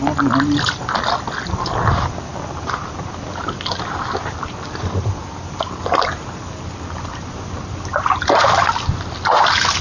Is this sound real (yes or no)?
yes